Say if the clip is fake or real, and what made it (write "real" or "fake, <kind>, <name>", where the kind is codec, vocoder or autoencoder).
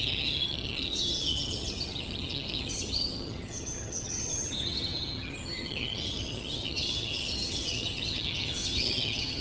fake, vocoder, HiFi-GAN